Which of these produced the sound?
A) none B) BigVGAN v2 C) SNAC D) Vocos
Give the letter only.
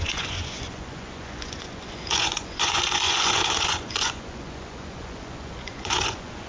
D